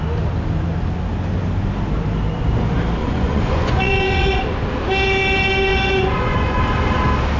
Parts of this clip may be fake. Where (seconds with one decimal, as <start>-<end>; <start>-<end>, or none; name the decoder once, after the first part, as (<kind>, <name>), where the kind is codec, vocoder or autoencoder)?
3.0-4.4 (vocoder, Vocos); 5.7-6.6